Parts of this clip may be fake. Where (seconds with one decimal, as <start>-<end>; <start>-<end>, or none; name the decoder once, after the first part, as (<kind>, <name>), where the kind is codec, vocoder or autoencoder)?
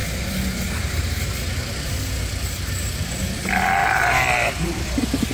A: none